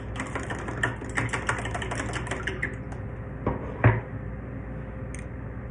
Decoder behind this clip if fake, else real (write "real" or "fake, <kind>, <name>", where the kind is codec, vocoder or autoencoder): real